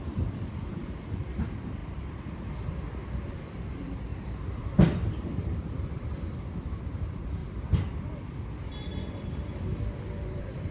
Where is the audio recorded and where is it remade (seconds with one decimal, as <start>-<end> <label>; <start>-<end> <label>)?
0.0-7.4 remade; 7.4-9.2 recorded; 9.2-10.7 remade